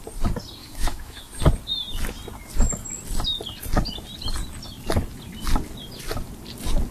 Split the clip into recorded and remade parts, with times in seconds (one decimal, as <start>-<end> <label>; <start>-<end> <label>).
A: 0.0-0.6 recorded; 0.6-1.4 remade; 1.4-6.9 recorded